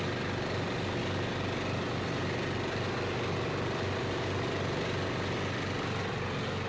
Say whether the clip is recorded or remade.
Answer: recorded